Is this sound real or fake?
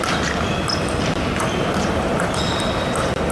real